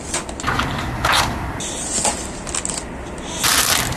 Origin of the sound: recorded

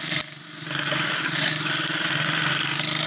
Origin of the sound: recorded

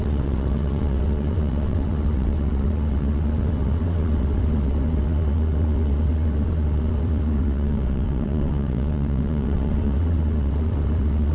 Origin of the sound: remade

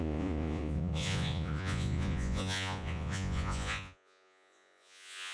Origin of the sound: remade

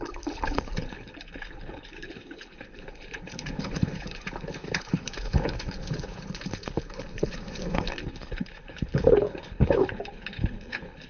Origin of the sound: remade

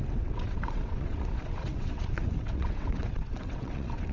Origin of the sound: remade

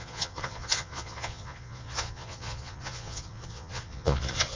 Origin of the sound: remade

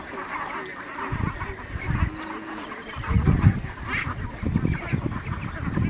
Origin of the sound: recorded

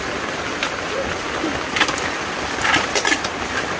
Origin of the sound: recorded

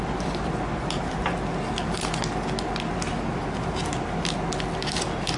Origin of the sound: recorded